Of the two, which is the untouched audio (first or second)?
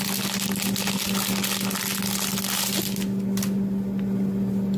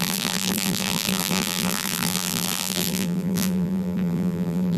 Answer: first